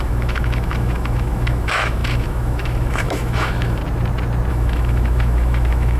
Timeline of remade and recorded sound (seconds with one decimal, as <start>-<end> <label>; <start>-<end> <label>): 0.0-3.8 remade; 3.8-4.5 recorded; 4.5-6.0 remade